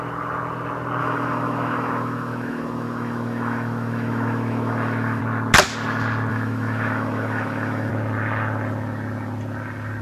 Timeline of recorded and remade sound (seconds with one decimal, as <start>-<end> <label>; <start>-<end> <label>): 0.0-1.0 recorded; 1.0-5.2 remade; 5.2-6.3 recorded; 6.3-7.9 remade; 7.9-10.0 recorded